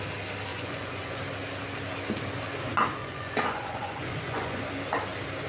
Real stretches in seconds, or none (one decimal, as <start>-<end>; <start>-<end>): 0.0-0.5; 1.2-3.0; 4.7-5.5